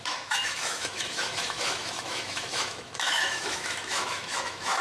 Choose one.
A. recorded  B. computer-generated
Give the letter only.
B